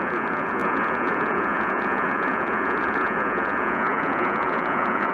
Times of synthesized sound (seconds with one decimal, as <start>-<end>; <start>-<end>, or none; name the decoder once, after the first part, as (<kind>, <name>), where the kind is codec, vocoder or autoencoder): 0.0-5.1 (vocoder, Vocos)